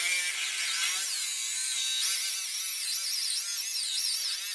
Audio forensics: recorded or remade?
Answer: recorded